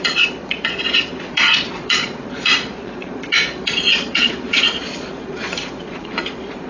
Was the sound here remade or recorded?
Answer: remade